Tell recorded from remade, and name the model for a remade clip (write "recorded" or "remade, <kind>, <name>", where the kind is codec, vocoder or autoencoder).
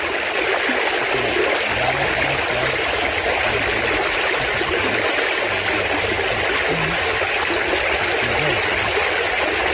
recorded